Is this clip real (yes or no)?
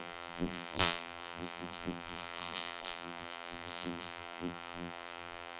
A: no